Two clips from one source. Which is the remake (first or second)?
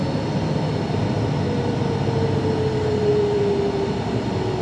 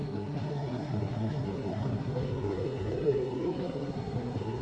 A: second